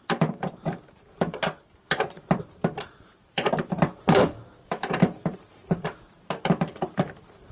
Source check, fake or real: fake